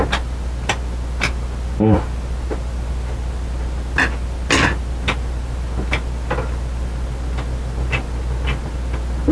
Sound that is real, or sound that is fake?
real